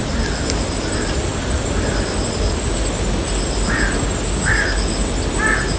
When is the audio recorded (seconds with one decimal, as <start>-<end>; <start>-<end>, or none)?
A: 0.0-5.8